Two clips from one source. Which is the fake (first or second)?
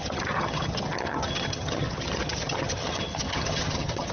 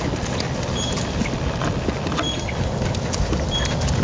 first